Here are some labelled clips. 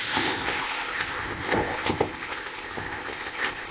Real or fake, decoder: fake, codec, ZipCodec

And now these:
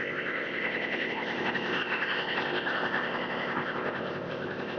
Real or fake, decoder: fake, codec, ZipCodec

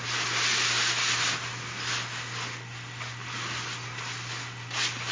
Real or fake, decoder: real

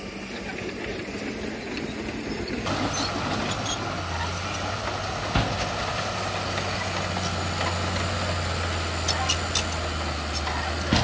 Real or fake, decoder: real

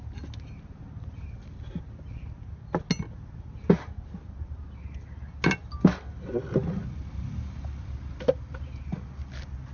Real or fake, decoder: real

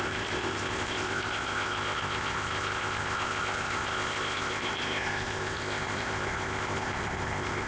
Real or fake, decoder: fake, codec, ZipCodec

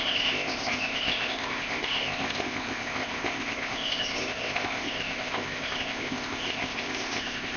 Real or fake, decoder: fake, codec, ZipCodec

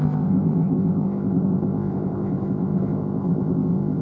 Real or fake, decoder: fake, codec, ZipCodec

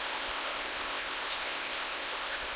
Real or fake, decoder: fake, codec, ZipCodec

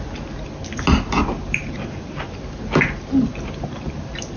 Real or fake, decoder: real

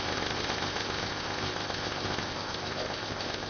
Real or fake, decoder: fake, codec, ZipCodec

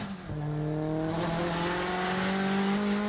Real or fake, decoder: real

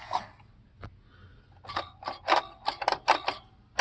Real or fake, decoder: real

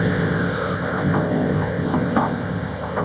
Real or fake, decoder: fake, codec, ZipCodec